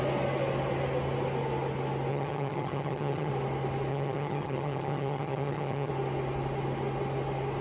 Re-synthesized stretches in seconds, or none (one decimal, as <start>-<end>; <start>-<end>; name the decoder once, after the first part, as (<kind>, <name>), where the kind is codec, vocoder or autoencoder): 2.1-3.3 (vocoder, HiFi-GAN); 3.9-5.9